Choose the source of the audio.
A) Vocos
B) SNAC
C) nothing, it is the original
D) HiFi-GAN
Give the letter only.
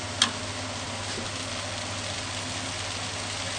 C